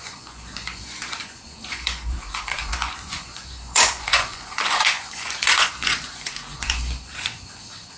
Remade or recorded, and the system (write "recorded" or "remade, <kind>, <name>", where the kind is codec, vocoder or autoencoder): remade, vocoder, Vocos